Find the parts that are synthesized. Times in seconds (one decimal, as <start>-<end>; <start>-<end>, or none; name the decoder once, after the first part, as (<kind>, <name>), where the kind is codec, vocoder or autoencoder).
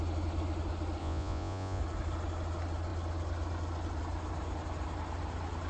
1.0-1.8 (vocoder, Vocos)